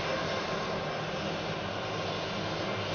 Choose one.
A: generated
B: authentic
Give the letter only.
B